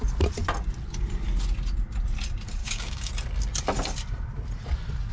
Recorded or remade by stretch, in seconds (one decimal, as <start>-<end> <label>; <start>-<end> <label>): 0.0-2.6 recorded; 2.6-3.1 remade; 3.1-5.1 recorded